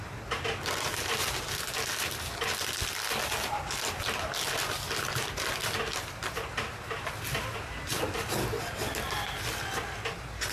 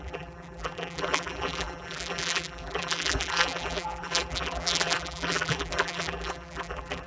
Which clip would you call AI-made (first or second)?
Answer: second